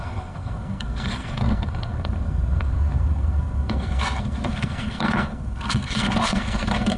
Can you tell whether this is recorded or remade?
remade